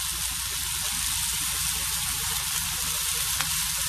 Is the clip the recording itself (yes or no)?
yes